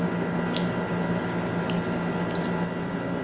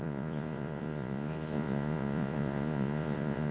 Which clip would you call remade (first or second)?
second